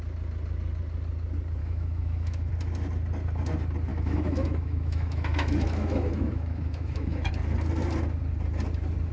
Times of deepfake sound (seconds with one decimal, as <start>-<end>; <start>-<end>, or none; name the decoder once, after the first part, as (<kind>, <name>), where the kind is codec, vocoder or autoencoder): 1.6-2.5 (autoencoder, DAC-VAE); 3.9-7.3